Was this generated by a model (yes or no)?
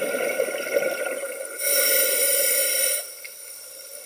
no